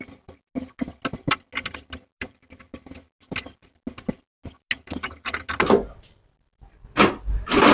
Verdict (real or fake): real